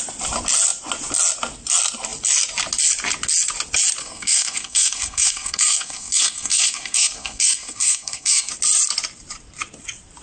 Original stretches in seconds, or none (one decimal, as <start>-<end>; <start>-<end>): 0.0-4.0; 8.5-10.2